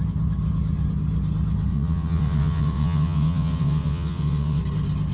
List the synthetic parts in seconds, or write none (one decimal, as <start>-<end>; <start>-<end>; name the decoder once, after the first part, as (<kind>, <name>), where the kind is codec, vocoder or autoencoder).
1.7-4.6 (vocoder, WaveNeXt)